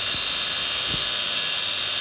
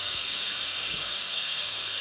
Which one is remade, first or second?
second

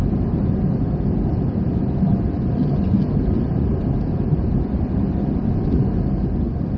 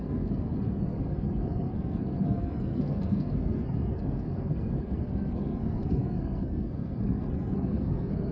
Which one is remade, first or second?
second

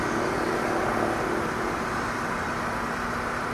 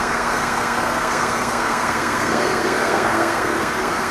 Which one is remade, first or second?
second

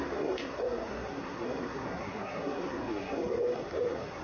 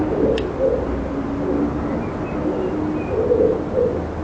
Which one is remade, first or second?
first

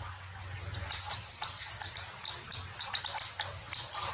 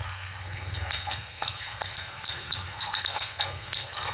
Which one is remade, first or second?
second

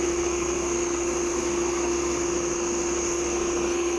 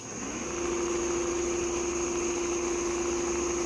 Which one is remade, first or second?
first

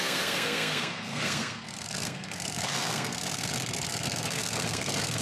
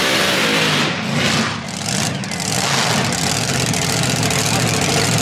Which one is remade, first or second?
first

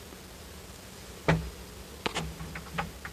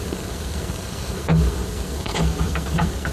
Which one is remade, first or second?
second